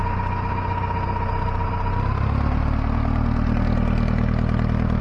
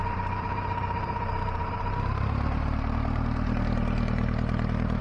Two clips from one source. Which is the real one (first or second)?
first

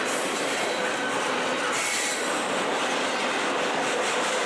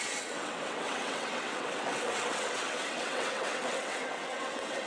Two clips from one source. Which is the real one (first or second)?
first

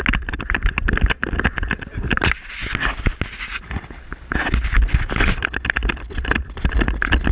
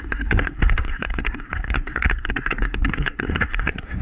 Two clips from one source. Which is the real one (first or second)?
first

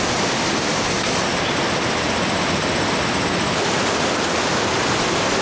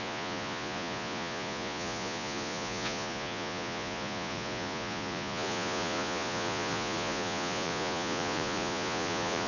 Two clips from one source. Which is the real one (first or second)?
first